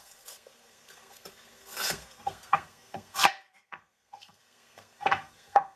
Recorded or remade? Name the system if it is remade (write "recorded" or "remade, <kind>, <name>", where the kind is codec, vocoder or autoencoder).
remade, codec, SNAC